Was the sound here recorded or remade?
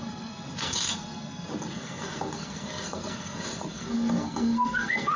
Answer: remade